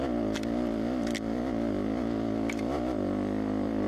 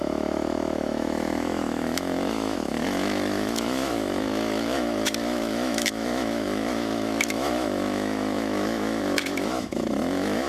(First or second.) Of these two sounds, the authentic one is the first